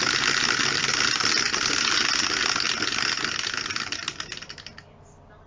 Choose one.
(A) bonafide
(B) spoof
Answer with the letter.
A